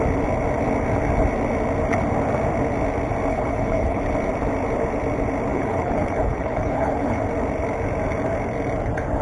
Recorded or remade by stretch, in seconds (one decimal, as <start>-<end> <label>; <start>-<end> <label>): 0.0-3.3 recorded; 3.3-4.0 remade; 4.0-5.5 recorded; 5.5-7.2 remade; 7.2-9.2 recorded